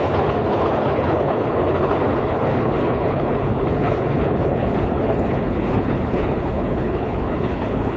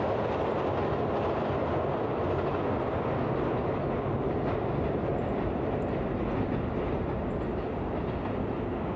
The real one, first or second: second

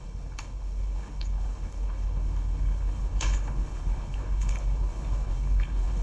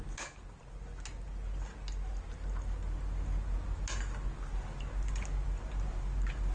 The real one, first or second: second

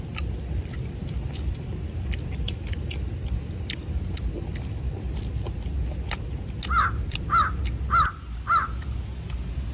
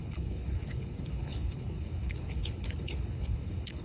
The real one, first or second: first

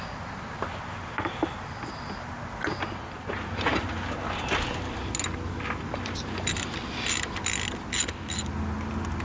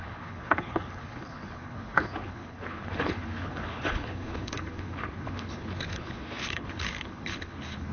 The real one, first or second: first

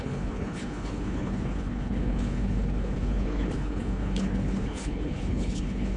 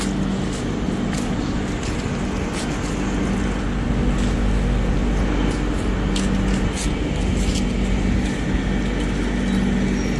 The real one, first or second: second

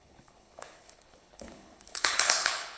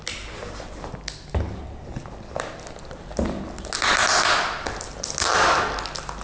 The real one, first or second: second